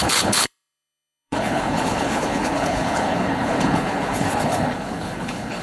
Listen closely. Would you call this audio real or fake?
fake